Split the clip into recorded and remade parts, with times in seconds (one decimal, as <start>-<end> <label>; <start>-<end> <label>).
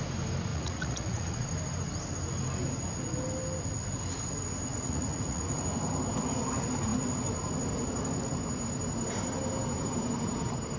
0.0-0.5 recorded; 0.5-1.5 remade; 1.5-4.7 recorded; 4.7-5.4 remade; 5.4-10.8 recorded